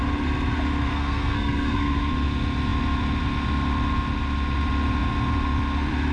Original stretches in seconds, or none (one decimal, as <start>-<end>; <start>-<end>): 0.0-0.9; 2.1-6.1